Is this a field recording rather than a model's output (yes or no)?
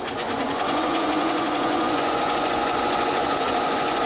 no